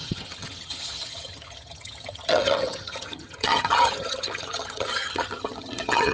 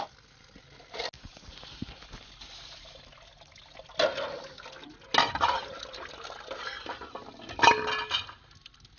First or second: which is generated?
first